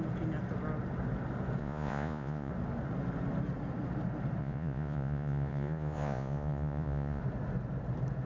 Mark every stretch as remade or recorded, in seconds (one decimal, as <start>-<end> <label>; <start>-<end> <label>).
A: 0.0-1.6 recorded; 1.6-2.5 remade; 2.5-4.4 recorded; 4.4-7.2 remade; 7.2-8.3 recorded